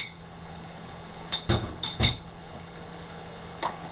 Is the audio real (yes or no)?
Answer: no